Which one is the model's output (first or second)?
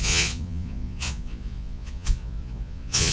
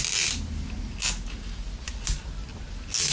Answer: first